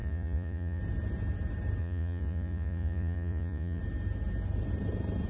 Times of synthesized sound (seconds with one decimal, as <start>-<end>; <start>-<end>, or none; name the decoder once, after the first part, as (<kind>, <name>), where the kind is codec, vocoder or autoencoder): 0.0-0.8 (vocoder, Vocos); 1.8-3.8

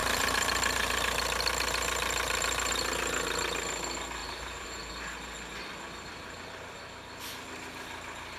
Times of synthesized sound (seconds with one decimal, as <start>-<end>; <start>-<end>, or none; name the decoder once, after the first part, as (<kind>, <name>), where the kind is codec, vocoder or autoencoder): 0.0-2.7 (vocoder, BigVGAN v2); 4.2-4.9

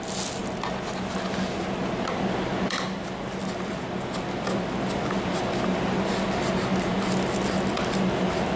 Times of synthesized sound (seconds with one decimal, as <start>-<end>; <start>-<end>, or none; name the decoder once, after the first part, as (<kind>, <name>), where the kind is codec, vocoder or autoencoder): none

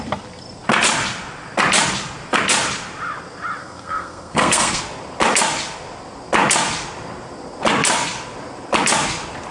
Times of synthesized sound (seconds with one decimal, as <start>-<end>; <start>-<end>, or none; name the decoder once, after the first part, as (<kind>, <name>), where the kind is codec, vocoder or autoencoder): 3.6-4.8 (codec, SNAC)

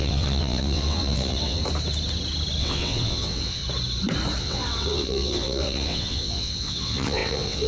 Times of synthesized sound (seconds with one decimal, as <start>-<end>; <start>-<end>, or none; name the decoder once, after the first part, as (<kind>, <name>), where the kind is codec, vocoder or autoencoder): 0.0-1.6 (vocoder, WaveNeXt); 2.6-3.6; 4.4-7.7